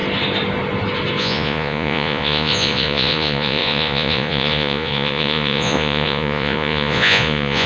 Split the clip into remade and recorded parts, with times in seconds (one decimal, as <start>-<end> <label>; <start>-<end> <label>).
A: 0.0-1.2 recorded; 1.2-7.7 remade